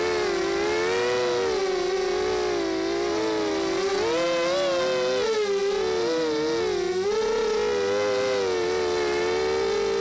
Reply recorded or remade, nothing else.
recorded